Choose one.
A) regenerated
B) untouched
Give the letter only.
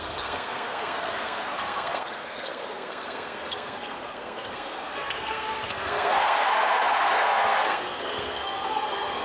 A